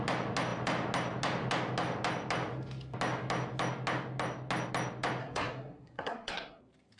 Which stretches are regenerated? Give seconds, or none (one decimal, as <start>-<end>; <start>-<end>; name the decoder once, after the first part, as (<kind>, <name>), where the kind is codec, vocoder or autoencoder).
5.2-6.6 (codec, SNAC)